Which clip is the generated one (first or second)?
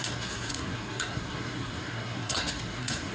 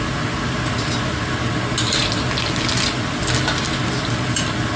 first